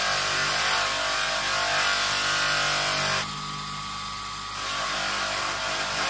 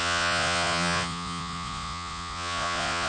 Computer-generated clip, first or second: second